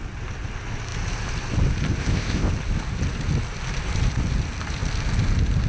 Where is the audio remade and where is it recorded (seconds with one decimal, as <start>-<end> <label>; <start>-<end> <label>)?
0.0-2.0 recorded; 2.0-2.5 remade; 2.5-5.7 recorded